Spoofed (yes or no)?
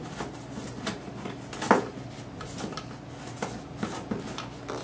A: no